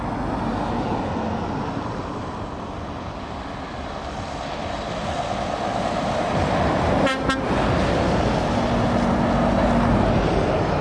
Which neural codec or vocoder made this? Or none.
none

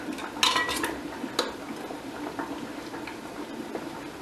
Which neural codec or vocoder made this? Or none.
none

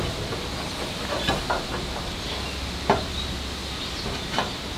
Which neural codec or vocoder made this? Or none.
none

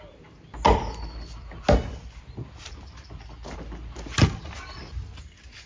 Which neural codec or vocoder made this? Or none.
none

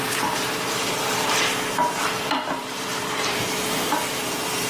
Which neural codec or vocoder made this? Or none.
vocoder, BigVGAN v2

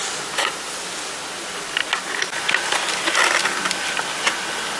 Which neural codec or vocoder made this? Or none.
none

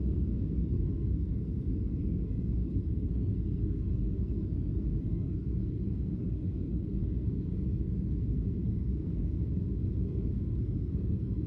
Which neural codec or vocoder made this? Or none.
codec, SNAC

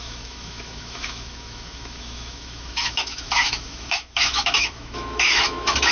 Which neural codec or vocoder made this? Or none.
autoencoder, DAC-VAE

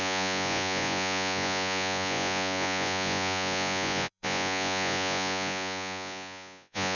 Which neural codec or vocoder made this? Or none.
vocoder, Vocos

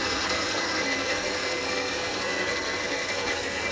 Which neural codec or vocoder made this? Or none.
codec, SNAC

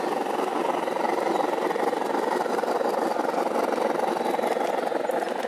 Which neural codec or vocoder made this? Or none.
none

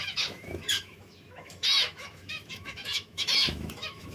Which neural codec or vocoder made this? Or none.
autoencoder, DAC-VAE